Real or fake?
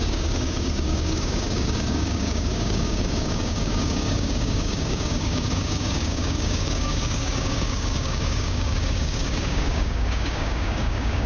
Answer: fake